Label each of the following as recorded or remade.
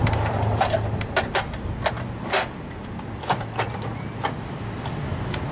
remade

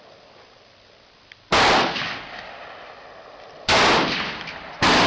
recorded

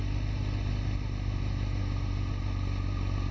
recorded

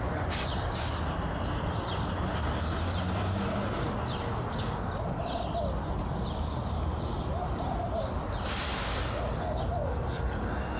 recorded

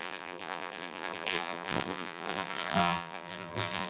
remade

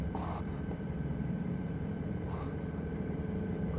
remade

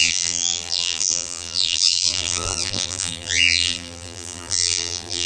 remade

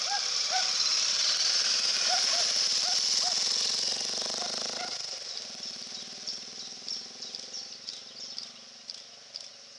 remade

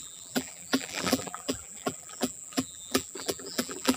remade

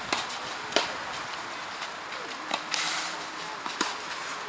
remade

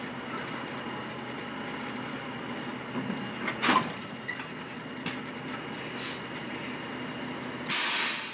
recorded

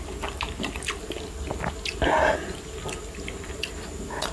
recorded